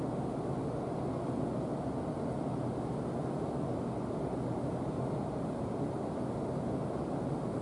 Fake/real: real